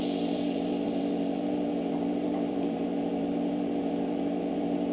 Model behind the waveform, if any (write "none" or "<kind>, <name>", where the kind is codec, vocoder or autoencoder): vocoder, BigVGAN v2